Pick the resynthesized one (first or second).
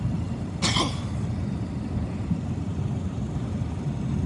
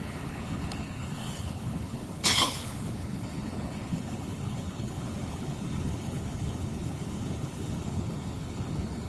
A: second